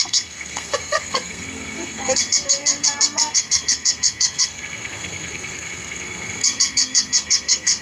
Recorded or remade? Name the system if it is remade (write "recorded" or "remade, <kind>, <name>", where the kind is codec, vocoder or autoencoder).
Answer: remade, codec, SNAC